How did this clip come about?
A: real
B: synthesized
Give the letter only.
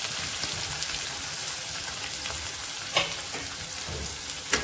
A